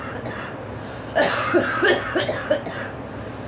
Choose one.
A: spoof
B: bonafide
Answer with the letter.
B